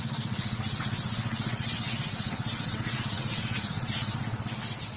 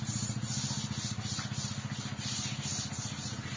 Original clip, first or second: second